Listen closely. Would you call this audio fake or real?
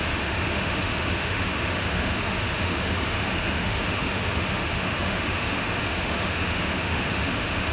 fake